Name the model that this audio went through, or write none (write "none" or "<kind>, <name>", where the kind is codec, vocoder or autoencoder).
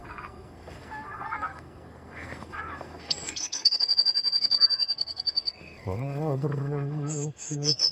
codec, SNAC